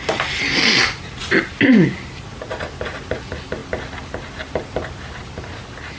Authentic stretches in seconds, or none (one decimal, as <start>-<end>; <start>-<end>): 0.0-6.0

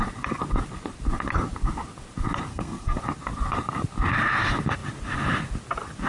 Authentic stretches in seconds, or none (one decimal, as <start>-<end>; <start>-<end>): 0.0-2.5; 3.0-6.1

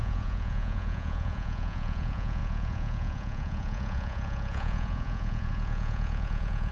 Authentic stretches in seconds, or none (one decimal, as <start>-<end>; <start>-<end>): none

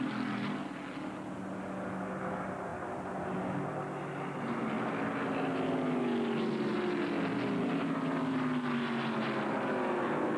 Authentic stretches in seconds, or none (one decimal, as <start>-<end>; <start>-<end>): 0.0-10.4

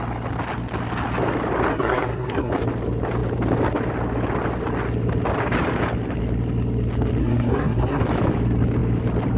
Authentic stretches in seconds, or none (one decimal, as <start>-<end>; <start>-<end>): 0.0-1.7; 2.5-7.2; 8.0-9.4